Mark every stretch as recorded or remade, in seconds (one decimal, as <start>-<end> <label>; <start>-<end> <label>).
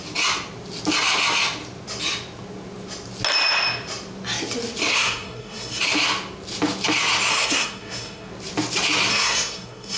0.0-4.9 recorded; 4.9-5.8 remade; 5.8-7.3 recorded; 7.3-8.3 remade; 8.3-9.1 recorded; 9.1-10.0 remade